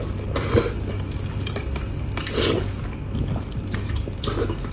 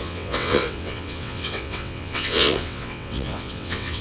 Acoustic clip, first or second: first